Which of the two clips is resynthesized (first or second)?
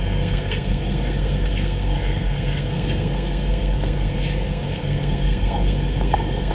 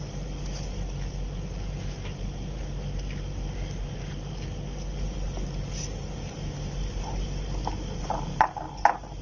first